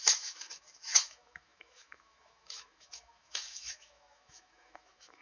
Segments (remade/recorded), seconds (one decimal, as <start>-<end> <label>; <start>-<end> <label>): 0.0-5.2 remade